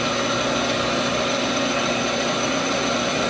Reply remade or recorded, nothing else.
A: recorded